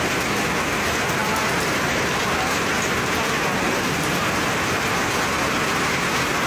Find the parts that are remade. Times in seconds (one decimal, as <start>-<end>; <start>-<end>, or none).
none